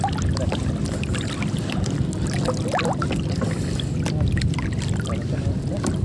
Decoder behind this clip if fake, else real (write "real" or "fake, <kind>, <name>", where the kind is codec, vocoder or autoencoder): real